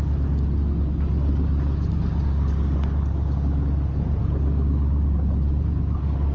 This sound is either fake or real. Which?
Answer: real